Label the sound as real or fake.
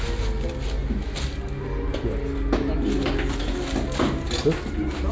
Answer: real